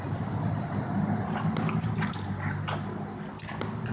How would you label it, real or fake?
real